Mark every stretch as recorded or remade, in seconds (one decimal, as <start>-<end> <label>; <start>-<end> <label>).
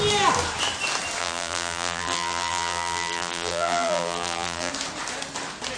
0.0-1.2 recorded; 1.2-4.7 remade; 4.7-5.8 recorded